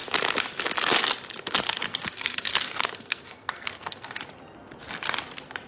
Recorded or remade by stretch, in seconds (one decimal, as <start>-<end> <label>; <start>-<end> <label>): 0.0-1.9 recorded; 1.9-4.2 remade; 4.2-5.7 recorded